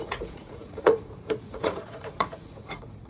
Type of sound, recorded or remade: remade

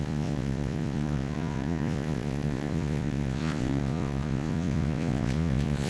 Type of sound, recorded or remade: remade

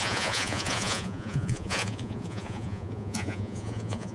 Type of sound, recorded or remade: remade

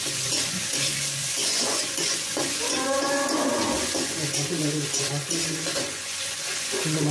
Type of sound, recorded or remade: remade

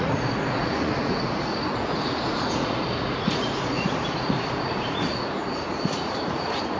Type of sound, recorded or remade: remade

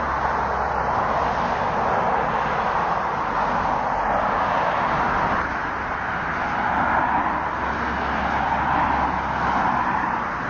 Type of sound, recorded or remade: recorded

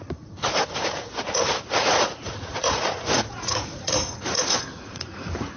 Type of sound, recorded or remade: remade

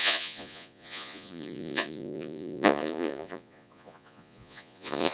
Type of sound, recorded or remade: remade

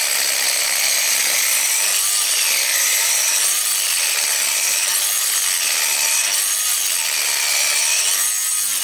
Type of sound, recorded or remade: recorded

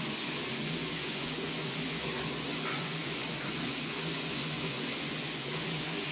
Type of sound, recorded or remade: remade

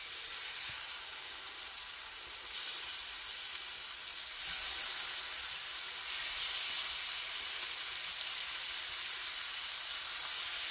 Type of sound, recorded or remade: recorded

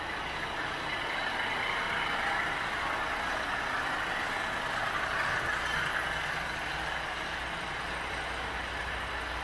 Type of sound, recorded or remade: recorded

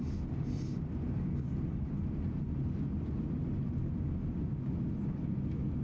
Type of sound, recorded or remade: recorded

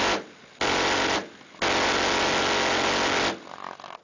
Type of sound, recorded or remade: recorded